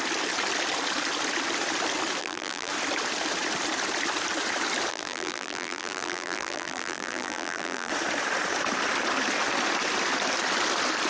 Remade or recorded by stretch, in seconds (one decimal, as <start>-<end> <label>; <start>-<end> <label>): 0.0-2.2 recorded; 2.2-2.7 remade; 2.7-4.9 recorded; 4.9-7.9 remade; 7.9-11.1 recorded